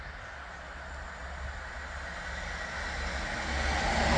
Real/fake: real